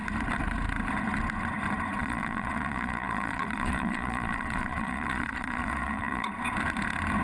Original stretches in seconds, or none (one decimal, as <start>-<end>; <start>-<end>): 0.0-2.0; 6.3-7.2